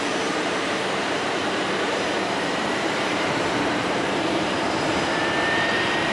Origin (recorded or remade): remade